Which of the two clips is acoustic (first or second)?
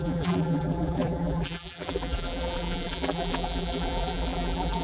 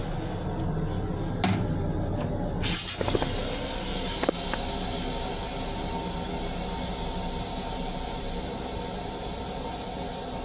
second